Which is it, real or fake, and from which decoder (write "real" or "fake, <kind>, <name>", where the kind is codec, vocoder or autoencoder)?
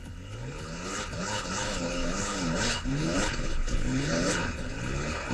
fake, codec, HILCodec